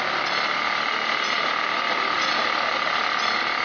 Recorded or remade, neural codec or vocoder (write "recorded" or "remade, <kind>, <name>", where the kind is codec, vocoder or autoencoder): recorded